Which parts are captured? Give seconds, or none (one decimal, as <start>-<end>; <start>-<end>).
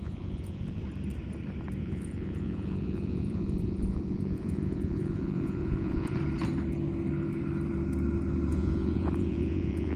0.8-1.8; 6.2-8.5